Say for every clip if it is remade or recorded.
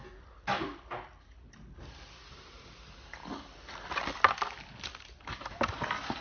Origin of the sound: recorded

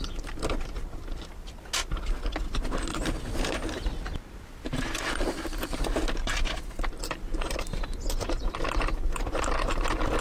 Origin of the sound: recorded